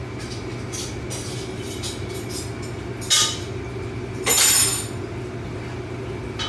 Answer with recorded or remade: recorded